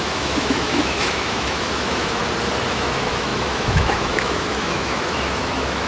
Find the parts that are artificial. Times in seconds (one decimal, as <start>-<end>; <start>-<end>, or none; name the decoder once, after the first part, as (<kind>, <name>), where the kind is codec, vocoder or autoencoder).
0.0-2.2 (autoencoder, DAC-VAE); 2.7-5.9